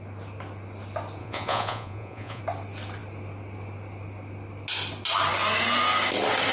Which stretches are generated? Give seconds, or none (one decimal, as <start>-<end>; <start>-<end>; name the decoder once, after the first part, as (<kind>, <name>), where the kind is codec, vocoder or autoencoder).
1.2-2.4 (vocoder, Vocos)